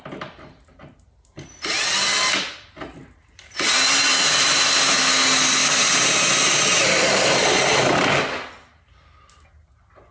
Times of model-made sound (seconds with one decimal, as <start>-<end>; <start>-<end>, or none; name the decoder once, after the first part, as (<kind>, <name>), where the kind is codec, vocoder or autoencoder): 4.1-5.0 (vocoder, BigVGAN v2); 5.6-6.3